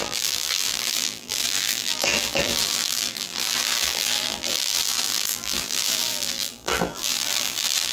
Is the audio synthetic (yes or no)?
yes